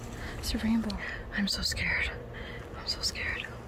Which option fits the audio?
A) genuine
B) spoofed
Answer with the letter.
A